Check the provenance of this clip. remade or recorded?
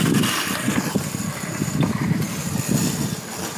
recorded